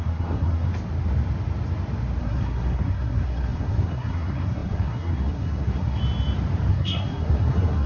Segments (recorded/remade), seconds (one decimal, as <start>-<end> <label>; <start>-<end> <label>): 0.0-0.7 remade; 0.7-2.2 recorded; 2.2-6.0 remade; 6.0-6.7 recorded; 6.7-7.9 remade